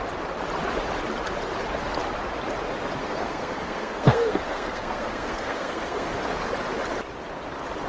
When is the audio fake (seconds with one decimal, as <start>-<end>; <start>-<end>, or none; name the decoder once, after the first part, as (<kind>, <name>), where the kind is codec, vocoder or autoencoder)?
3.0-6.1 (codec, SNAC)

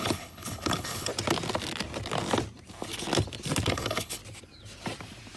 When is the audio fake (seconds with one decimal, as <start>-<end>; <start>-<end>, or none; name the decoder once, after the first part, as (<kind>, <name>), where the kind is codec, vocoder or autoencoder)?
0.0-1.1 (codec, HILCodec); 3.7-4.2

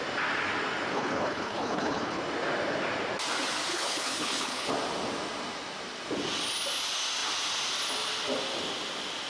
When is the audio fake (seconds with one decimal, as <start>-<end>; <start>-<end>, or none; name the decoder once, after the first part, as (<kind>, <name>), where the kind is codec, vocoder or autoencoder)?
0.9-2.2 (codec, HILCodec); 3.7-4.7